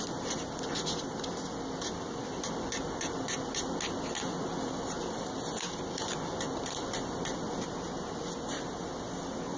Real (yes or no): yes